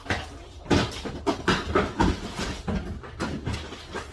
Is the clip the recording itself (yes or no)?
yes